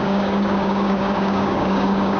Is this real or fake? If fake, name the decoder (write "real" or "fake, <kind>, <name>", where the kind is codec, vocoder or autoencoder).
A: fake, codec, DAC